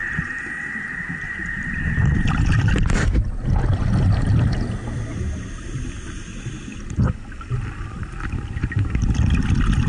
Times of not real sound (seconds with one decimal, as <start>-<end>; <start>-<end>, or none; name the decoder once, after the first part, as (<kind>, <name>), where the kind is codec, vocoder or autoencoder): 0.0-2.7 (vocoder, BigVGAN v2)